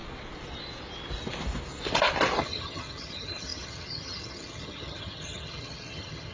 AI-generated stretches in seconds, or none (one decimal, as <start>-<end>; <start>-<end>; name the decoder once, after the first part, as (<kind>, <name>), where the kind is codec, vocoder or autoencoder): 2.4-6.3 (vocoder, HiFi-GAN)